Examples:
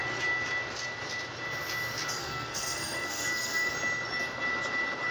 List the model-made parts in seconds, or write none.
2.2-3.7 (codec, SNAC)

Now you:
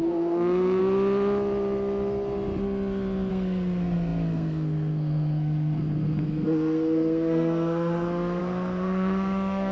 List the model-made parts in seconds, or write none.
0.0-0.8 (codec, SNAC); 3.3-9.7

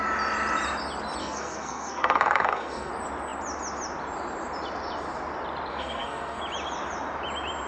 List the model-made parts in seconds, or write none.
1.2-2.9 (codec, SNAC); 5.7-6.4

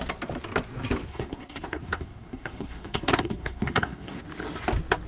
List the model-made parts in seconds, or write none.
1.1-4.2 (codec, SNAC)

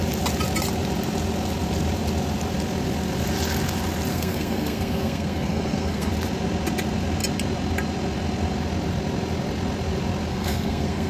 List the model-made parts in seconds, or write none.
4.1-6.1 (codec, SNAC); 10.3-11.1